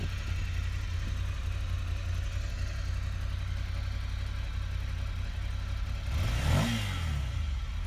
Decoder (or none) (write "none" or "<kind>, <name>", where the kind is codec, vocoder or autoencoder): none